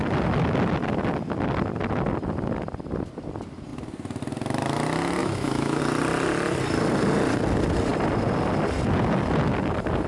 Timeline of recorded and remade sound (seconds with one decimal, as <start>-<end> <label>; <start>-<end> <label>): 0.0-5.2 recorded; 5.2-5.8 remade; 5.8-10.1 recorded